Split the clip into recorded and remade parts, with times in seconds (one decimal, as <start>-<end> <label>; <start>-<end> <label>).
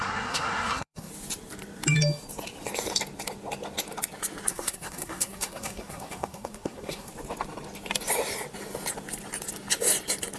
0.0-1.1 remade; 1.1-4.5 recorded; 4.5-7.1 remade; 7.1-10.4 recorded